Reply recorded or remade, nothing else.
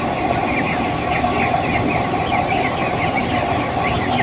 recorded